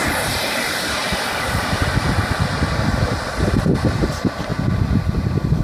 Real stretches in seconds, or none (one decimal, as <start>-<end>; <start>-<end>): 1.0-3.7; 4.5-5.6